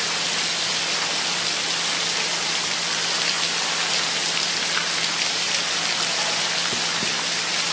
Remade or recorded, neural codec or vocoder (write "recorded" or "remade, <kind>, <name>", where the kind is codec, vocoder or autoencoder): recorded